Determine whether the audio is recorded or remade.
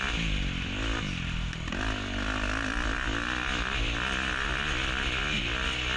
recorded